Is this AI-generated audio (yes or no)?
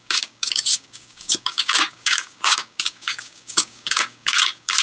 yes